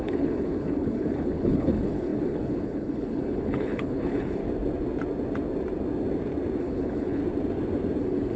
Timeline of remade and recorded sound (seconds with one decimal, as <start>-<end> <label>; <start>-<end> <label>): 0.0-4.4 remade; 4.4-6.6 recorded; 6.6-7.2 remade; 7.2-8.0 recorded; 8.0-8.4 remade